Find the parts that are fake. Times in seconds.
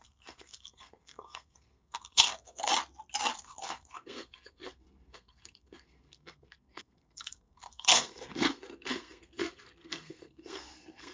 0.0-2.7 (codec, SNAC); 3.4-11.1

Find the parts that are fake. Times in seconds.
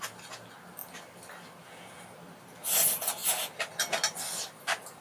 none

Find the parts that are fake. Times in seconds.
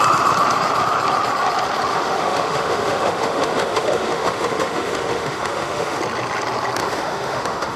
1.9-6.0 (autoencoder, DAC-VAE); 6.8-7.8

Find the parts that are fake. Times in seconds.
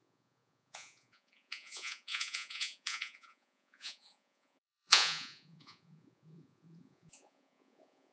0.0-8.1 (vocoder, Vocos)